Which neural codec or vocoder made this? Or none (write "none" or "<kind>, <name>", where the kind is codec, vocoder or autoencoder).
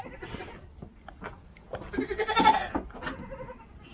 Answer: none